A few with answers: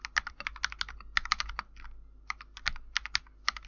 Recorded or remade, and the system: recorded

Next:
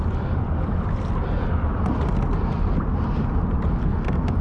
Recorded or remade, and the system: recorded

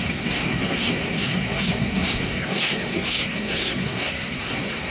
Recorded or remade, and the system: remade, codec, SNAC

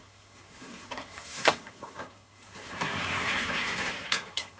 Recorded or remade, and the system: remade, codec, SNAC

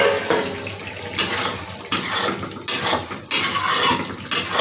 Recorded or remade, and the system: recorded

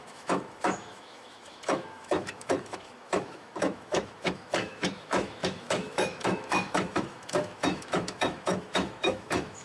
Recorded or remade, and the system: remade, autoencoder, DAC-VAE